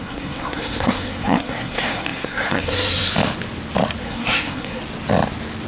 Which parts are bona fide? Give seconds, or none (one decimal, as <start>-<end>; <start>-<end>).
3.1-4.0; 4.8-5.7